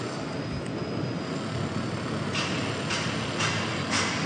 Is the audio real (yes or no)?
yes